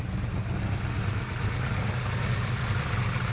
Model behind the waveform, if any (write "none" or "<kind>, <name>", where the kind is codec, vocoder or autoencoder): none